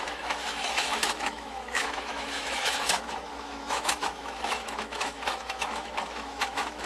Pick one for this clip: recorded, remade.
remade